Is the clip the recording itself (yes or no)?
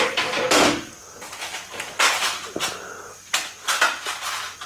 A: yes